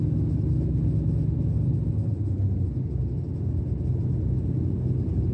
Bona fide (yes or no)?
yes